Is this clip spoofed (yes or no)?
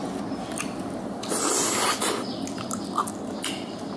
yes